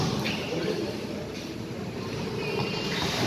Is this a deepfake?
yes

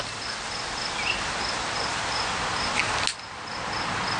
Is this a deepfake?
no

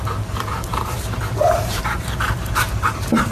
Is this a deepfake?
yes